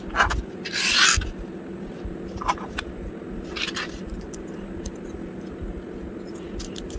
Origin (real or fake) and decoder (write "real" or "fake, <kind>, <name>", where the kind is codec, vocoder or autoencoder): real